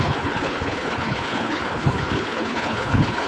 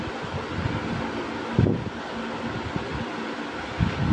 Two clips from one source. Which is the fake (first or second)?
first